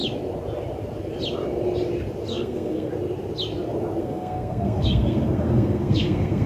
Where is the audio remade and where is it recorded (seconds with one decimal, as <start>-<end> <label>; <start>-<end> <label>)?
0.0-2.3 recorded; 2.3-2.9 remade; 2.9-4.0 recorded; 4.0-6.5 remade